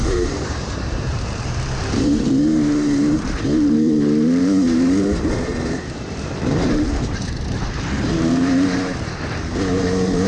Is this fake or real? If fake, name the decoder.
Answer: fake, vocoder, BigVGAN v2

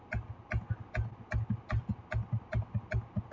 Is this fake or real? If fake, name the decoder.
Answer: real